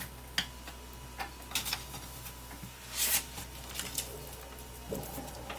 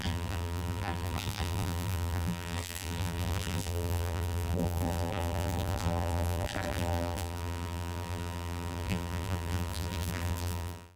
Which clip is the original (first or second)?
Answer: first